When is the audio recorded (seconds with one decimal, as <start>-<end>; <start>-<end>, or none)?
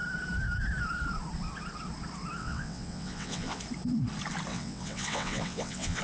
0.0-2.4; 3.6-4.5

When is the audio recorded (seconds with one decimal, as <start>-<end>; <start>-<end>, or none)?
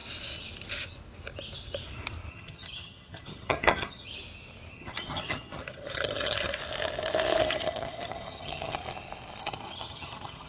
0.0-2.3; 4.1-4.7; 6.6-7.4; 8.8-9.4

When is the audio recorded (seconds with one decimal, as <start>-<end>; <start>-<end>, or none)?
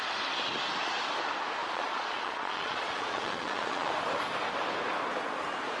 0.0-1.6; 3.9-5.8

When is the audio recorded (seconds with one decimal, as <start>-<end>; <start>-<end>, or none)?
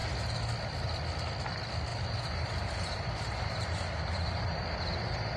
0.0-1.9